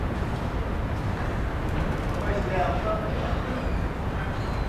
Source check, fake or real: real